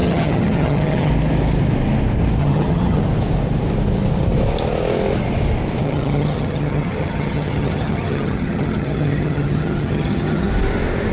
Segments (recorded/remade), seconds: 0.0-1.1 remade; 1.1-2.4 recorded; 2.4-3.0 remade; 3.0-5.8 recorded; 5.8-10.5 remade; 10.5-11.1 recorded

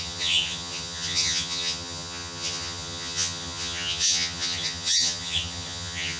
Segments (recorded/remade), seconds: 0.0-6.2 remade

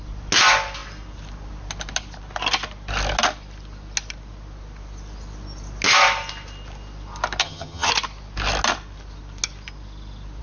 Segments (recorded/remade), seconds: 0.0-7.4 recorded; 7.4-7.9 remade; 7.9-10.4 recorded

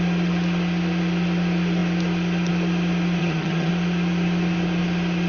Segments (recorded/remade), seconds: 0.0-3.2 recorded; 3.2-3.7 remade; 3.7-5.3 recorded